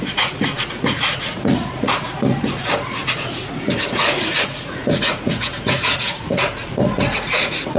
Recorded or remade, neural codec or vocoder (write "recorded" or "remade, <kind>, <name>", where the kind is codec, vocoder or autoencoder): remade, vocoder, Vocos